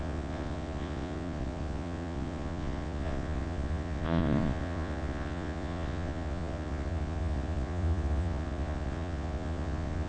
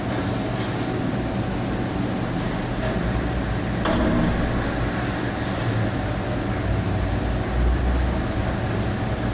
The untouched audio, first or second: second